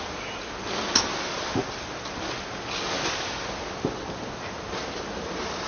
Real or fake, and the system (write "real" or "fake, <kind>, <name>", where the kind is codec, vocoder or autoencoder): real